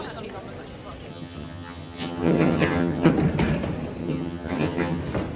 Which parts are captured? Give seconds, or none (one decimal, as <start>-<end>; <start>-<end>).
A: 0.0-1.1; 3.1-4.0; 5.0-5.4